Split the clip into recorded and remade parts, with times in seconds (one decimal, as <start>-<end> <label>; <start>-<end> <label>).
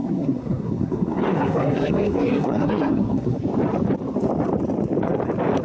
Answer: 0.0-3.4 remade; 3.4-5.6 recorded